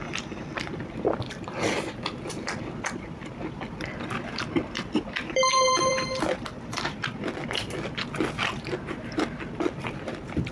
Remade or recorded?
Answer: remade